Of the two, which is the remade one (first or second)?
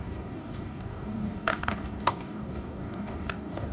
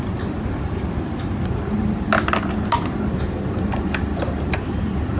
first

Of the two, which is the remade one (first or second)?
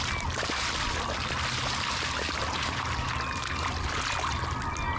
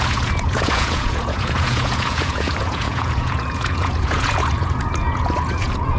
second